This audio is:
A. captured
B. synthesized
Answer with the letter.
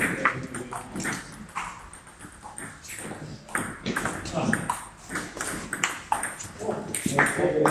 A